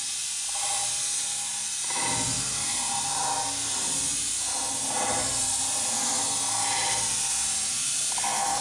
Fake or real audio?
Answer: real